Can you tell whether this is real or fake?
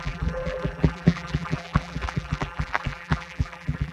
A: fake